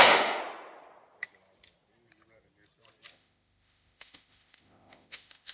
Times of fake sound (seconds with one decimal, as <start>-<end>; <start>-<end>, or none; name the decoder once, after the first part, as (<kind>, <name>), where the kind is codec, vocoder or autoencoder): 0.0-0.4 (autoencoder, DAC-VAE); 3.1-5.5